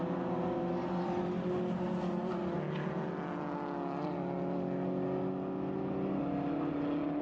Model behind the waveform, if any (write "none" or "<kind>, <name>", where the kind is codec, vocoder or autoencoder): none